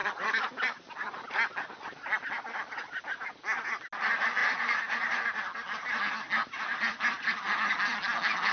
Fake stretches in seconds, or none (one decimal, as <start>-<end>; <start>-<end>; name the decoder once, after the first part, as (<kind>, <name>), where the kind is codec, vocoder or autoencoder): 4.4-5.1 (vocoder, BigVGAN v2)